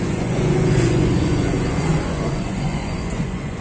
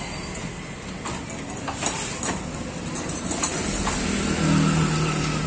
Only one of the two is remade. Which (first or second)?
first